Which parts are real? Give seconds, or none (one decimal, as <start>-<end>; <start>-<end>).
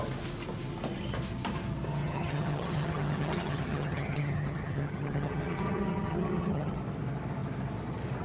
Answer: 0.0-1.9; 6.8-8.2